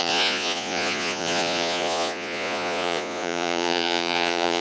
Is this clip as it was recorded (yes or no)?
no